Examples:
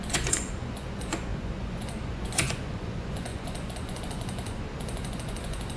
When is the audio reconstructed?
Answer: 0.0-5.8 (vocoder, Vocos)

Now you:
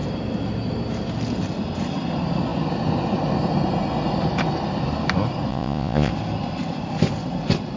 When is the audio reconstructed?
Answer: 5.5-6.1 (vocoder, Vocos)

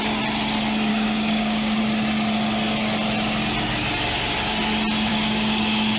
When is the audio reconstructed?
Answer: 0.9-1.8 (codec, DAC); 5.1-6.0

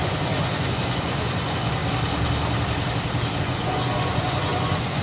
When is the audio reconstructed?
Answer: 0.0-1.8 (vocoder, Vocos); 3.4-5.0